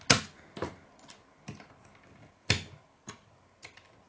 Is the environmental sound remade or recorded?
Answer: recorded